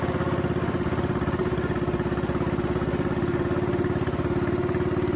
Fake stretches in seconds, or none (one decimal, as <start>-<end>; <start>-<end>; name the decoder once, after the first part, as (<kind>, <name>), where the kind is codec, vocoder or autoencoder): none